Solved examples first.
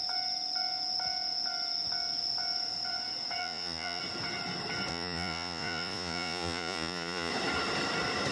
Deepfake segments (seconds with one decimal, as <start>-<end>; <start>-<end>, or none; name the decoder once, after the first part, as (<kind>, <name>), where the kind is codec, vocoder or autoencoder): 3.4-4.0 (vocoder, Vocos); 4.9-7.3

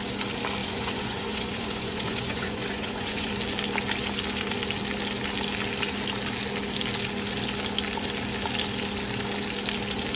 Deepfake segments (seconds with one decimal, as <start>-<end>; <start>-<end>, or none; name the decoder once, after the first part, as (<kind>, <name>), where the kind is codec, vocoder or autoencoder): 0.6-3.3 (vocoder, Vocos)

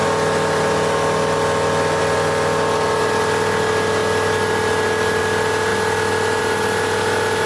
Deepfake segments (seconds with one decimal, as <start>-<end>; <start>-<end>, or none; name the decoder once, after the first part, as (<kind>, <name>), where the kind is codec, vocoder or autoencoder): none

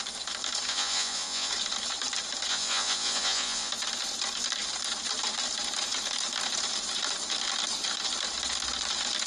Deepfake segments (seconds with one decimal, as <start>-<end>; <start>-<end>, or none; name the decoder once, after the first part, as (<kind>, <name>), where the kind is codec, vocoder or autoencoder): 0.7-1.5 (vocoder, Vocos); 2.5-3.7

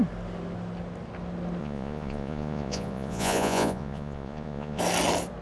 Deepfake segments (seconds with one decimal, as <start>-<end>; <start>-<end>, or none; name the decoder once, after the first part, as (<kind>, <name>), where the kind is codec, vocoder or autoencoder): 1.6-4.8 (vocoder, Vocos)